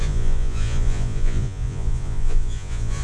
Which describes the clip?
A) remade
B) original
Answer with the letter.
A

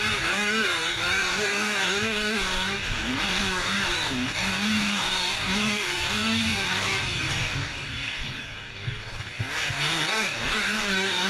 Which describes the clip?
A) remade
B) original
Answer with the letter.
A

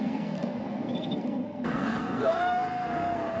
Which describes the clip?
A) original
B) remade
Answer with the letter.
B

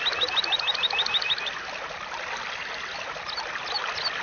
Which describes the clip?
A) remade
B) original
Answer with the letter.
B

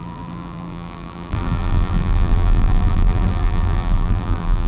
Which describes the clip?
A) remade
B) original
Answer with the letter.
A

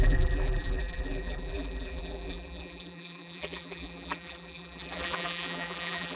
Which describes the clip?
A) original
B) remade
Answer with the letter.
B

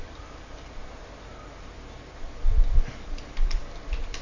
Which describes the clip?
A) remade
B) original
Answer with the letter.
B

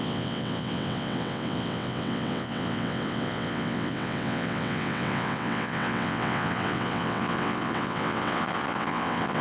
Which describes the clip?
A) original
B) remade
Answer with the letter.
B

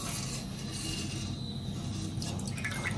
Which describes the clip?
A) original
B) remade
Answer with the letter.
A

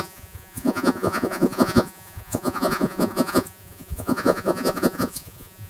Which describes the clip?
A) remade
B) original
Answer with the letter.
A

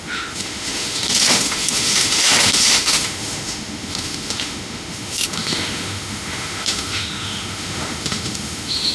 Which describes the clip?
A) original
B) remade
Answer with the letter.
B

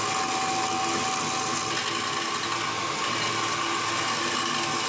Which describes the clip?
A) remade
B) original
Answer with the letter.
B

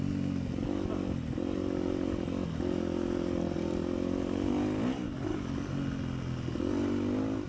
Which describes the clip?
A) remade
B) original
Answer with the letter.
B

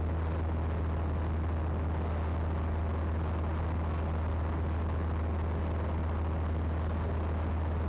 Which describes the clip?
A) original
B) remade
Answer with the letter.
A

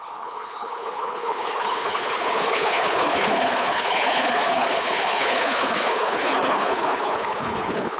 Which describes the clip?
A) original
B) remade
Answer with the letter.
B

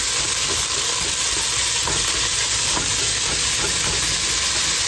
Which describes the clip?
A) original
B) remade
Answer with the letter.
A